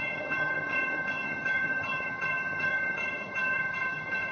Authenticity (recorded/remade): remade